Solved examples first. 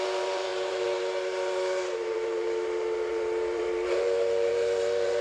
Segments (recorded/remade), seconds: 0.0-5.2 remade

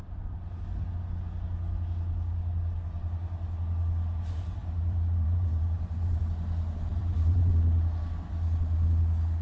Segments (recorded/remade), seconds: 0.0-4.6 recorded; 4.6-6.2 remade; 6.2-6.9 recorded; 6.9-7.5 remade; 7.5-9.4 recorded

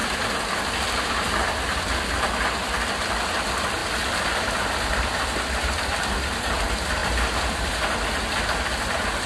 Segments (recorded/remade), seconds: 0.0-3.8 recorded; 3.8-4.9 remade; 4.9-7.0 recorded; 7.0-7.6 remade; 7.6-9.3 recorded

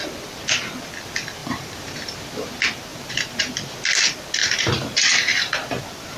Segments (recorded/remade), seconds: 0.0-1.4 recorded; 1.4-2.5 remade; 2.5-2.9 recorded; 2.9-3.5 remade; 3.5-4.4 recorded; 4.4-5.8 remade; 5.8-6.2 recorded

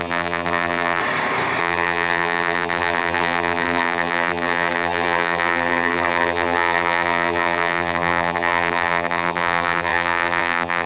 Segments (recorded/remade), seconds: 0.0-1.0 remade; 1.0-1.6 recorded; 1.6-10.9 remade

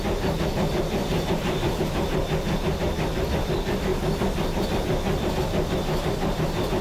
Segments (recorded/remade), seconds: 0.0-1.0 recorded; 1.0-1.8 remade; 1.8-6.8 recorded